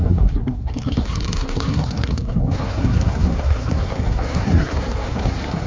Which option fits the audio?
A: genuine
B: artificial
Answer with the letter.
B